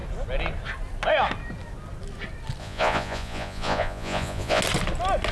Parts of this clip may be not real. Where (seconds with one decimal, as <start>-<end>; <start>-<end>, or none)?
2.6-4.6